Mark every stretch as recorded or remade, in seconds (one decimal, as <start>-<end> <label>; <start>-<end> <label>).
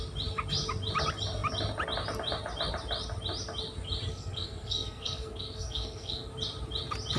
0.0-4.1 recorded; 4.1-6.3 remade; 6.3-7.2 recorded